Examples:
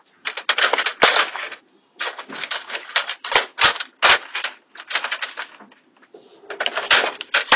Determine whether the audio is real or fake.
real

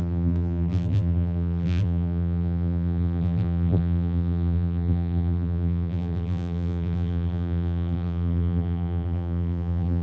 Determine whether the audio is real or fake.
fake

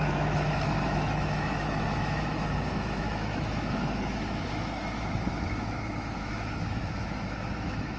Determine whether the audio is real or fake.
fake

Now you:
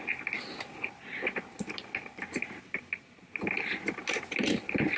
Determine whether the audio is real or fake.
real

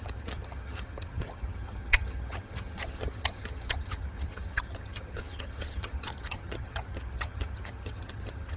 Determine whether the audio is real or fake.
fake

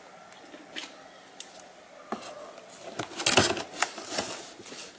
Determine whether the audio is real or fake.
real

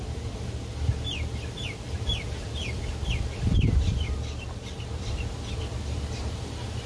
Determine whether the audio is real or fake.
real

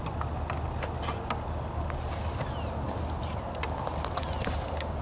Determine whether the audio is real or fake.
real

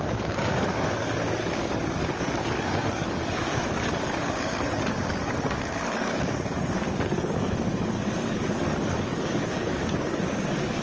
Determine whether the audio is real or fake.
fake